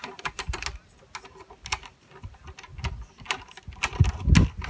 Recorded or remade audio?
recorded